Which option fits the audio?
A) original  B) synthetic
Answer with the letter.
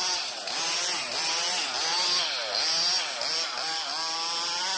A